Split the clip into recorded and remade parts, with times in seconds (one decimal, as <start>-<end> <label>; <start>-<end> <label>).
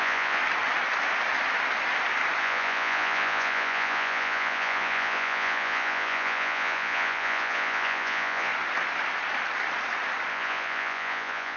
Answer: 0.0-0.4 remade; 0.4-2.4 recorded; 2.4-8.5 remade; 8.5-10.3 recorded; 10.3-11.6 remade